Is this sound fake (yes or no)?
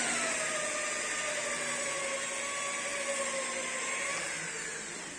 no